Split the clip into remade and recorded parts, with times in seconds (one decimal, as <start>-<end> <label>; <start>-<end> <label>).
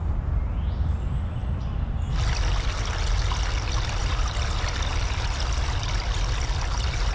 0.0-7.1 recorded